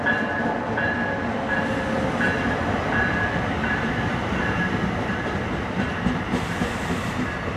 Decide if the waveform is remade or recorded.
recorded